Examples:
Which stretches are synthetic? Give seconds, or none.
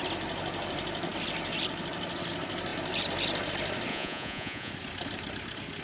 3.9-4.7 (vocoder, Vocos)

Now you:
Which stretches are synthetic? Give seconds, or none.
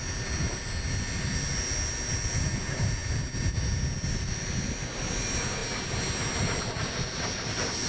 none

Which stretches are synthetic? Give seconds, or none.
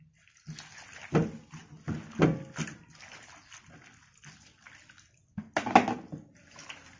none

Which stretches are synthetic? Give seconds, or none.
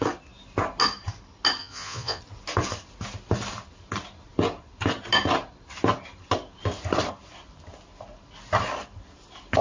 1.6-2.2 (vocoder, Vocos)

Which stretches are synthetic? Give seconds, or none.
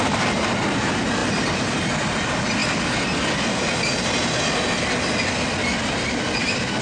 none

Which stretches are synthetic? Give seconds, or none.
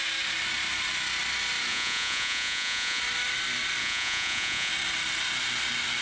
1.7-3.0 (vocoder, Vocos); 3.8-4.7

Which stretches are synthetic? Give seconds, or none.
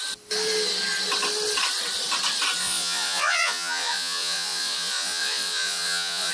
2.6-6.3 (vocoder, Vocos)